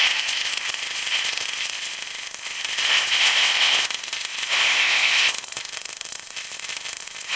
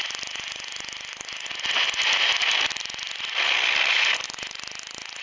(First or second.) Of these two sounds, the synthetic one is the first